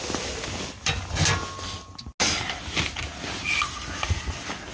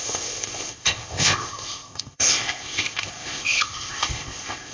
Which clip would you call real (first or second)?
first